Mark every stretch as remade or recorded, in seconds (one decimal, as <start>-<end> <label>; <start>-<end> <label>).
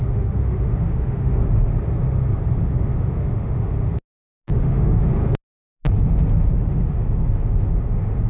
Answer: 0.0-1.7 remade; 1.7-2.6 recorded; 2.6-3.9 remade; 3.9-4.5 recorded; 4.5-5.2 remade; 5.2-6.0 recorded; 6.0-8.3 remade